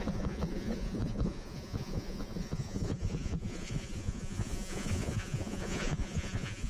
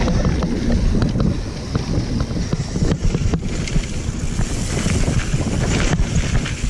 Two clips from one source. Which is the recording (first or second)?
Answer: second